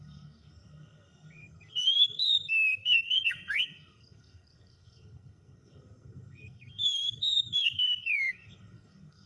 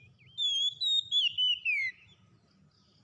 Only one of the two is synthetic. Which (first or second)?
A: first